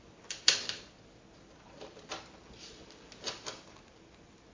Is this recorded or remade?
recorded